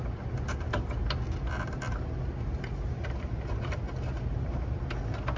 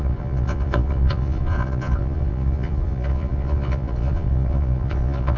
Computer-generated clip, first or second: second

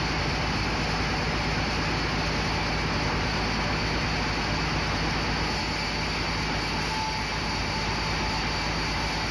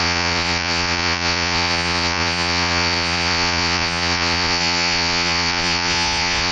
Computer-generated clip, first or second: second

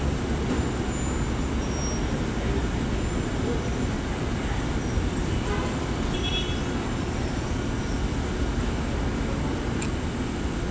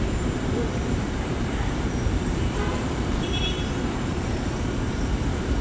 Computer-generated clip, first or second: second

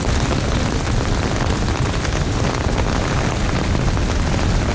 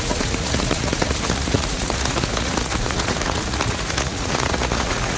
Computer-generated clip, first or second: second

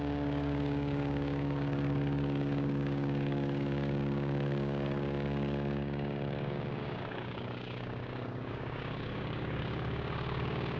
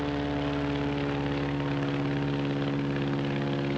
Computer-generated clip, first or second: first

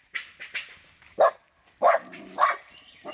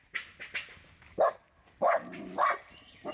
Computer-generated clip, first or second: first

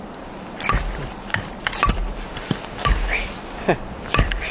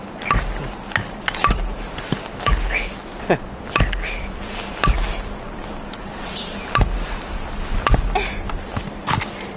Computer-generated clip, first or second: first